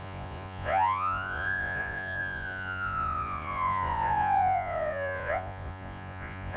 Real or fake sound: fake